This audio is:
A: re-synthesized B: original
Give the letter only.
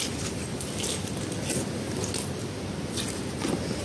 B